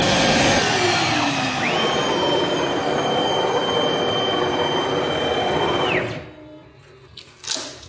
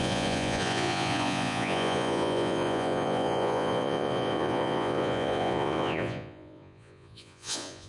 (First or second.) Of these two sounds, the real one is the first